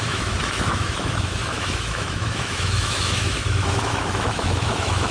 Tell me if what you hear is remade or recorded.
remade